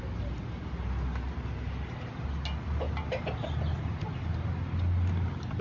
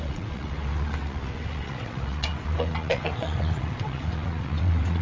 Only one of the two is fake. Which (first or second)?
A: second